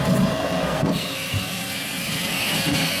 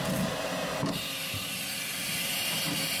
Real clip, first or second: second